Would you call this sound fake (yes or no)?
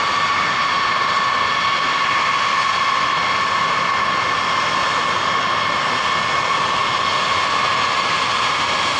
no